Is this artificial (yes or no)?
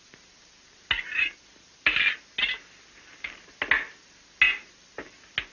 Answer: no